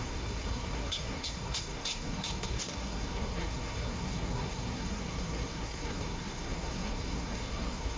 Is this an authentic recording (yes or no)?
no